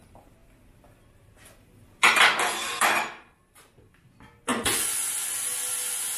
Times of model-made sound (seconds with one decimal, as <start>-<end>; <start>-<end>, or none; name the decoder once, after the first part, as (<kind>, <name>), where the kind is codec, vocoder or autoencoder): none